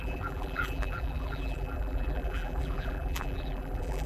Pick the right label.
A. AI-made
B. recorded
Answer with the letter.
A